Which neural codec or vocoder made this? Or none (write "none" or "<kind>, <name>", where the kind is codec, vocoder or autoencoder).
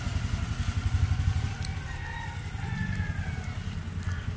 none